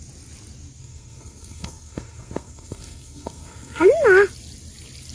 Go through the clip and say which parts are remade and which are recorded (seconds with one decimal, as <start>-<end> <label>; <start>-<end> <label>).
0.0-0.8 recorded; 0.8-3.9 remade; 3.9-5.1 recorded